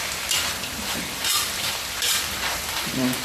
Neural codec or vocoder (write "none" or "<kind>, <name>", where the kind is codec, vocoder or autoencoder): vocoder, BigVGAN v2